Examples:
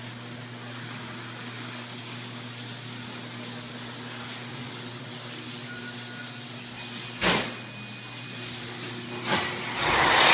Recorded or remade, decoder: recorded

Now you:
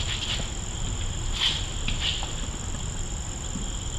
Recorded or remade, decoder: recorded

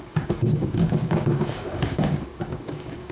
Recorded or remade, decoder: remade, codec, DAC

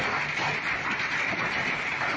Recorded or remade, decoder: recorded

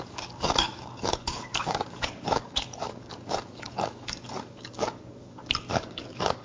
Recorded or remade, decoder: remade, codec, DAC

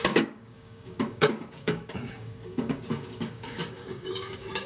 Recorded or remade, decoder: remade, codec, DAC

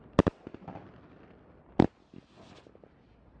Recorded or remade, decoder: recorded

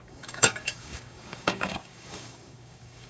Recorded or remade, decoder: remade, codec, DAC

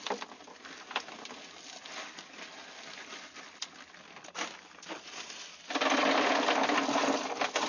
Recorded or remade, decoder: recorded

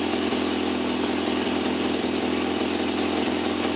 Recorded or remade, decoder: recorded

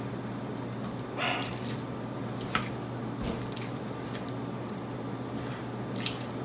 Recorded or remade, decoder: recorded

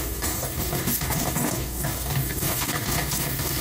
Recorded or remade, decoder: remade, codec, DAC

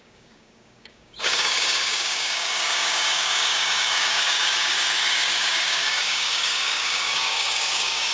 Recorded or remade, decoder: remade, codec, DAC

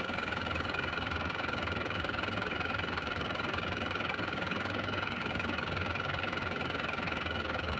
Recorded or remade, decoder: remade, codec, DAC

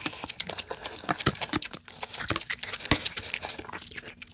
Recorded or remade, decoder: recorded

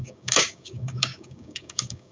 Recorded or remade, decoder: remade, codec, DAC